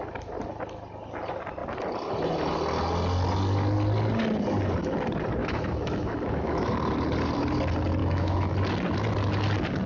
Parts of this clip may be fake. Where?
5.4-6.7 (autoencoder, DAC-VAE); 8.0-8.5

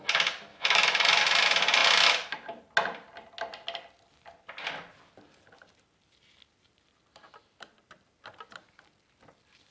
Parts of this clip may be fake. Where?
0.5-1.1 (autoencoder, DAC-VAE)

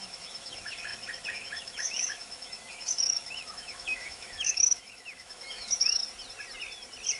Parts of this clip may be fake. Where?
0.0-6.0 (autoencoder, DAC-VAE)

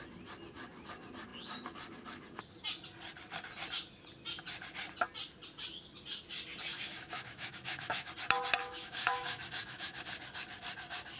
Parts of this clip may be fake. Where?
6.7-8.1 (autoencoder, DAC-VAE); 8.6-10.0

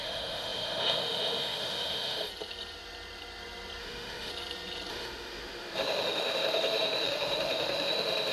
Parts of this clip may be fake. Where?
0.0-2.3 (autoencoder, DAC-VAE); 3.8-4.3; 4.9-8.3

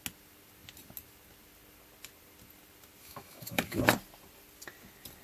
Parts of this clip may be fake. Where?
3.0-3.8 (autoencoder, DAC-VAE)